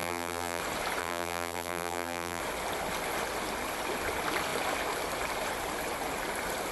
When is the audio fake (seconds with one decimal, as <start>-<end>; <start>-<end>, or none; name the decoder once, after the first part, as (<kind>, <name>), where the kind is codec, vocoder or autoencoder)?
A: 0.0-0.6 (vocoder, BigVGAN v2); 1.0-2.4